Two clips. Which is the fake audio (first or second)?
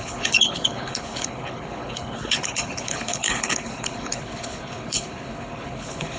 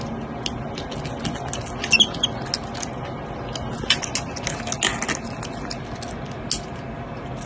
first